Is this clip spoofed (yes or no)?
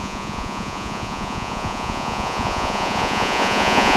yes